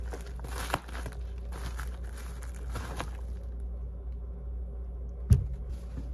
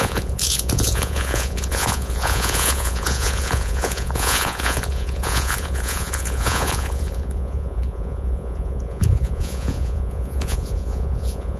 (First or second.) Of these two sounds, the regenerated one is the second